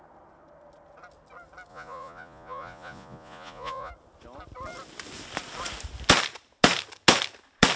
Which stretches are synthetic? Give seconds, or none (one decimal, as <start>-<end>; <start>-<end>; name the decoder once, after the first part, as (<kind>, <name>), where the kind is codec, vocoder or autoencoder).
1.7-3.9 (vocoder, Vocos)